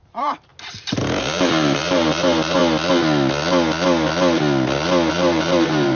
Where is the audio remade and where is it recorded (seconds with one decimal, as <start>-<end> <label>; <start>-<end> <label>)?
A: 0.0-0.5 remade; 0.5-1.2 recorded; 1.2-2.6 remade; 2.6-5.1 recorded; 5.1-6.0 remade